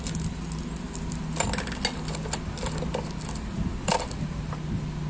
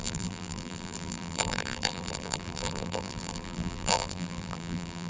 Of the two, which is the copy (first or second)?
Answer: second